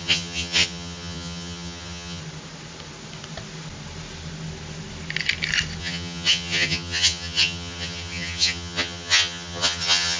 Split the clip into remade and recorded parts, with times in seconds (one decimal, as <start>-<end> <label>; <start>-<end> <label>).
0.0-2.2 remade; 2.2-5.8 recorded; 5.8-10.2 remade